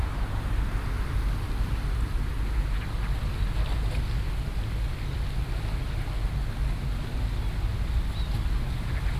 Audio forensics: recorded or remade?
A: recorded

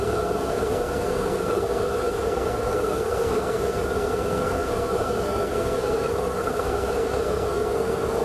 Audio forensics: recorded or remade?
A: remade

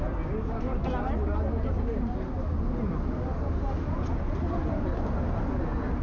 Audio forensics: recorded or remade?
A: recorded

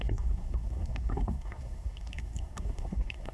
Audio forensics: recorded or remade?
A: remade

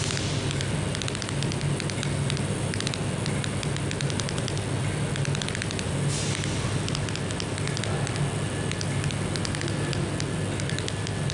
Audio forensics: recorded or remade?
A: recorded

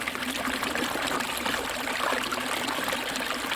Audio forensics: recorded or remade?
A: recorded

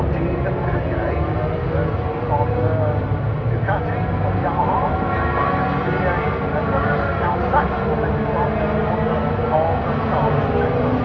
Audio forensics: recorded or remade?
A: recorded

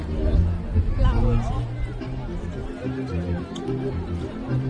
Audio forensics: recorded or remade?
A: recorded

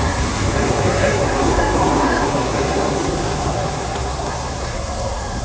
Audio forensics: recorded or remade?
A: remade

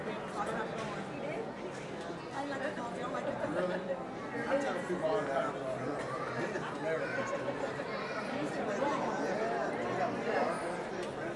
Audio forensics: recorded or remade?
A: recorded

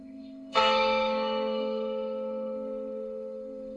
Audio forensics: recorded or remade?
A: remade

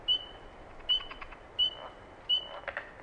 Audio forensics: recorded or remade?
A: recorded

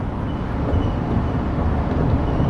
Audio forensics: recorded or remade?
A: recorded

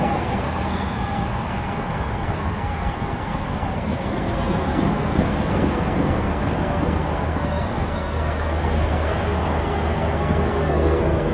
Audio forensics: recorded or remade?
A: remade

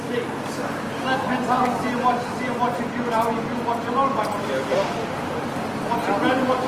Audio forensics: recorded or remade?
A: recorded